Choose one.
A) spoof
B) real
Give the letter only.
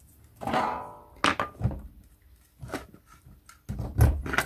B